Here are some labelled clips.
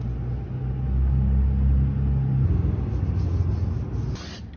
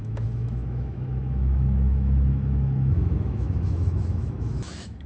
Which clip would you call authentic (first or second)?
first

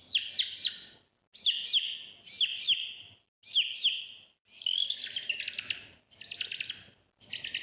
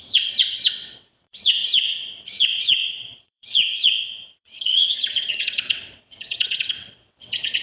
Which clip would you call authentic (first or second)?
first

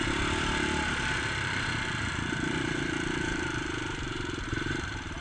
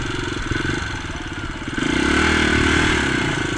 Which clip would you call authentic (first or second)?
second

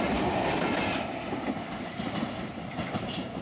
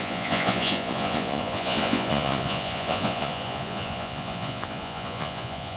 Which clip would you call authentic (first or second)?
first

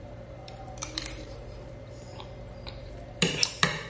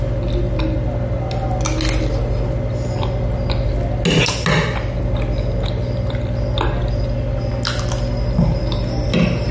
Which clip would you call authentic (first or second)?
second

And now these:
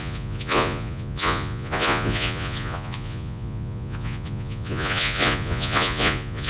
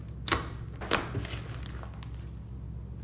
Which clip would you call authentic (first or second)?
second